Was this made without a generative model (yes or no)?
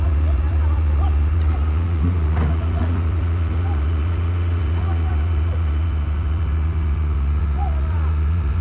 no